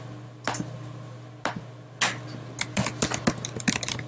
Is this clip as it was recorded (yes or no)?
yes